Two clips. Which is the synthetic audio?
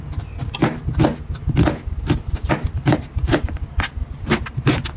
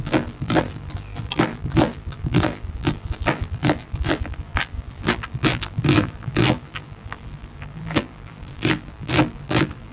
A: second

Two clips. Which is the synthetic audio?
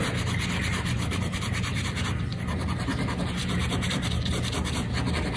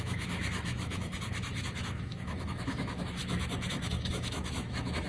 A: second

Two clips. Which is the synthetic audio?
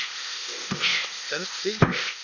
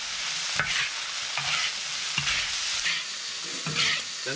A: first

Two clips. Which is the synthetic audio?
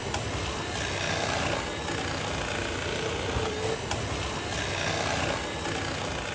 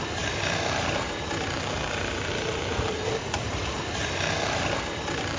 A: second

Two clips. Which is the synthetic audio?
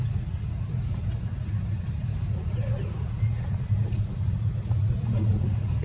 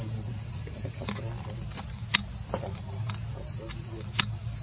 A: first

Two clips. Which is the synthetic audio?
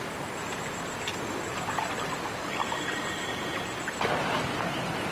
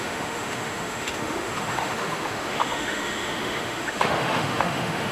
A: second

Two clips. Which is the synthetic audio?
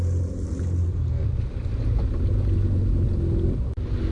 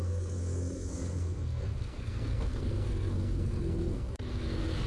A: second